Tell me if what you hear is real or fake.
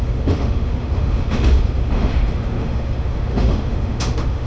fake